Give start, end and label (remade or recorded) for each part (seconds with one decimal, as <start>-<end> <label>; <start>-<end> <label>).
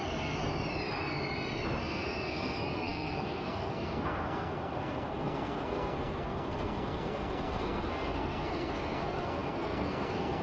0.0-0.4 remade; 0.4-1.8 recorded; 1.8-10.4 remade